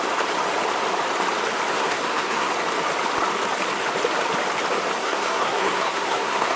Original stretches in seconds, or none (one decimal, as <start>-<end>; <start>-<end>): 0.0-1.7; 2.5-5.0